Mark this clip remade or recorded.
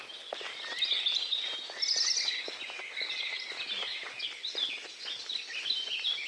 recorded